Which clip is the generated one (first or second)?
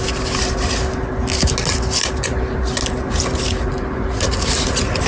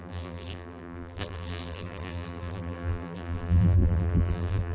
second